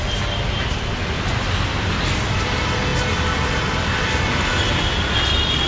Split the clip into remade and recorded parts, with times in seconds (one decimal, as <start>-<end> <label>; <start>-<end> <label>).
0.0-5.7 recorded